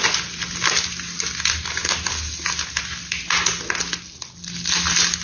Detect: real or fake real